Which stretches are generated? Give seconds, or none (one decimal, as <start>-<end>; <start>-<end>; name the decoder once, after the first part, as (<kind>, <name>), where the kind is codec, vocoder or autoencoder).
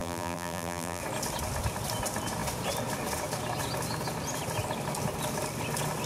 0.0-1.0 (vocoder, BigVGAN v2)